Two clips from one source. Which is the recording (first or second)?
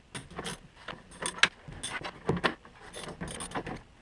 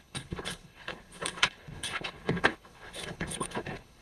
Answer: first